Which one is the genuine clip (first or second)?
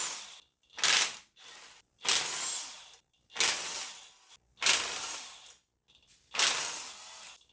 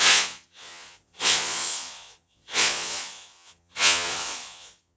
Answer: first